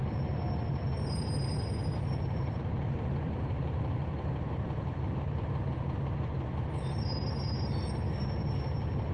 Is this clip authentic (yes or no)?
no